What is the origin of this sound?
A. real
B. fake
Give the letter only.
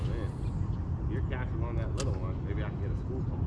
A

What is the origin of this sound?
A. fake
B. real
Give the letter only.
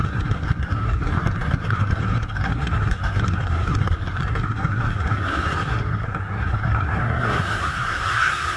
A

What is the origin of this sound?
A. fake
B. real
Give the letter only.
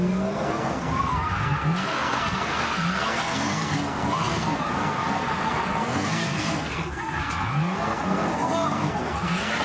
A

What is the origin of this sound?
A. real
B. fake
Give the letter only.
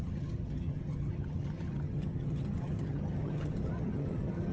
B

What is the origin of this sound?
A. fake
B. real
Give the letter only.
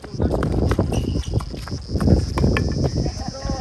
B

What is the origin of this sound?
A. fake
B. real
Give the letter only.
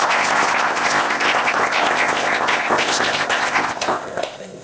A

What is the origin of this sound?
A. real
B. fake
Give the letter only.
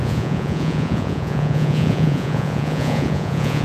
B